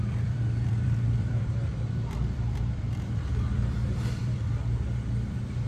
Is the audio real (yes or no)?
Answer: no